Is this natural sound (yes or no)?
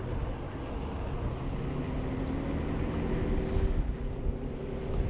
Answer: yes